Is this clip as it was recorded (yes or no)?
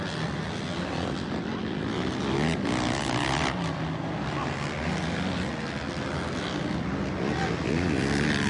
yes